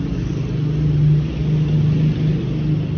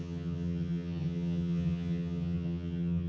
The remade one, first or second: second